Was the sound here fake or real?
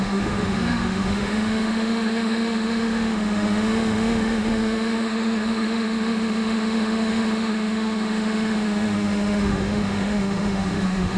fake